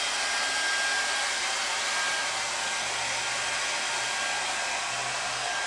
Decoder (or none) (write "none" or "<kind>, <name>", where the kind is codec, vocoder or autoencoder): none